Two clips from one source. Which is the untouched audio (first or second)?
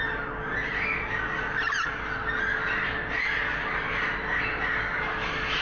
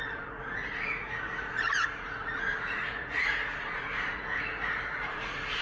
first